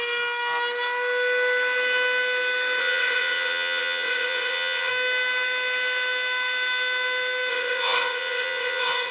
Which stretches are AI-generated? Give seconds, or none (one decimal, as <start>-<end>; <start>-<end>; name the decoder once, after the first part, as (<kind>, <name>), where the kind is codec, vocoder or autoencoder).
2.8-4.9 (vocoder, WaveNeXt); 7.5-9.1